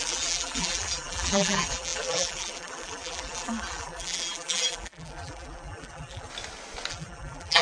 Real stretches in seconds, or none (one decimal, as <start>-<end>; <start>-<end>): 6.3-6.9